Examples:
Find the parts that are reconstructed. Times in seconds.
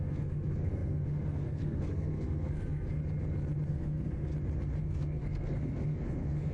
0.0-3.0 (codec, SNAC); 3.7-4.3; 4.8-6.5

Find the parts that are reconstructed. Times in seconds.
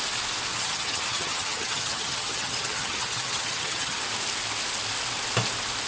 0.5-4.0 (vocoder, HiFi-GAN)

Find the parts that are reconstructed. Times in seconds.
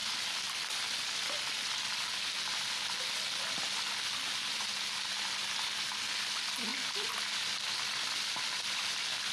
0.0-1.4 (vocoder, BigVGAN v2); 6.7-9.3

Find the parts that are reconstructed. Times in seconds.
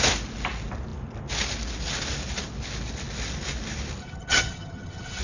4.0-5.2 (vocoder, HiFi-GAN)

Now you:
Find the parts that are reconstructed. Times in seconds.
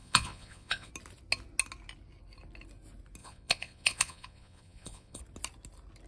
0.0-0.9 (vocoder, Vocos); 3.2-5.2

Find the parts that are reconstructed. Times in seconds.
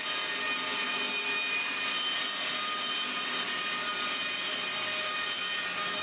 none